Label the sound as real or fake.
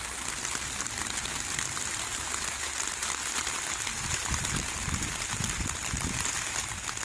real